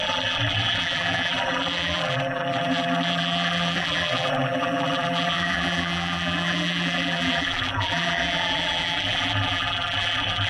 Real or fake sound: fake